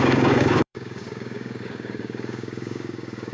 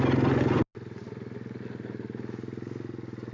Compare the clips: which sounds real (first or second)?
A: second